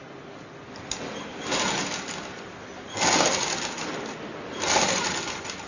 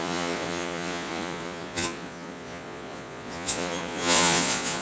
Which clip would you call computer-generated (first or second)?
second